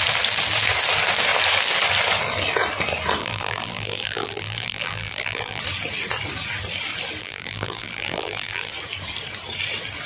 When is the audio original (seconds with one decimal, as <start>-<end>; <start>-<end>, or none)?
0.0-3.2; 5.6-7.2; 8.7-10.1